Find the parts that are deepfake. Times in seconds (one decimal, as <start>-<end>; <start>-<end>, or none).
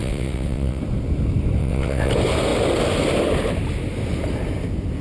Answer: 0.0-0.8; 1.6-2.1